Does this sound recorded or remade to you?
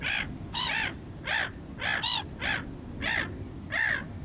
recorded